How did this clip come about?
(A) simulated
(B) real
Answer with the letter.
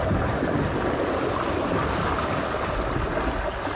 B